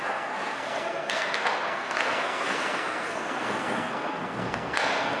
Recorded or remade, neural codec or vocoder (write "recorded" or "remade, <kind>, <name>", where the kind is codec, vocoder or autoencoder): remade, codec, SNAC